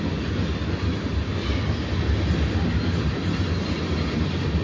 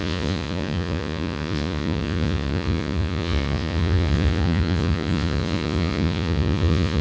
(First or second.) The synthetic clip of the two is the second